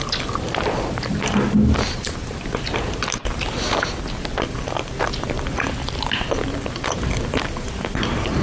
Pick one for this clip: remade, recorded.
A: recorded